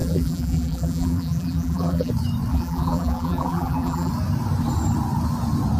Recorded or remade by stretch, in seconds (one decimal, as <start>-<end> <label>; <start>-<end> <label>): 0.0-2.1 remade; 2.1-2.5 recorded; 2.5-4.1 remade; 4.1-5.8 recorded